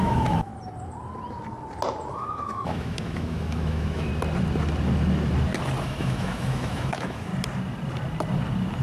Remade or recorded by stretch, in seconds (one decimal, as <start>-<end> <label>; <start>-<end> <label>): 0.0-0.5 remade; 0.5-2.1 recorded; 2.1-4.1 remade; 4.1-5.8 recorded; 5.8-7.3 remade; 7.3-8.8 recorded